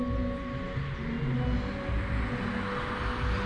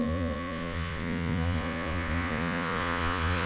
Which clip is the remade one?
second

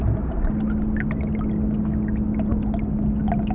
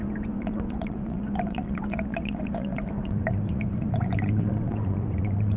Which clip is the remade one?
second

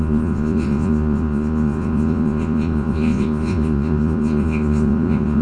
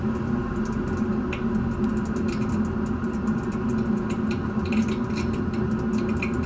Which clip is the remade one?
first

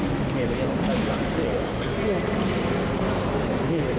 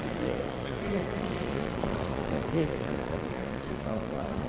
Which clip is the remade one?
second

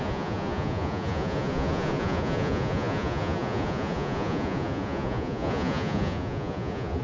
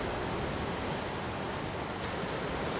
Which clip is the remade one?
first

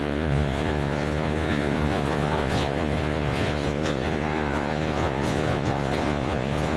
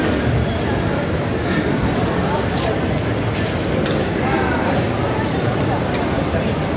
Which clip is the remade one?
first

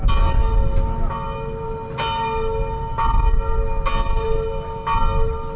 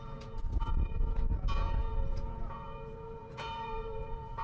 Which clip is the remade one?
second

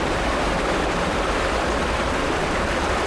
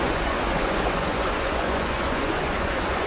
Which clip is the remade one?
second